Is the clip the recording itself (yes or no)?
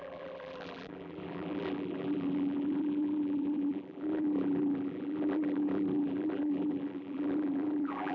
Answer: no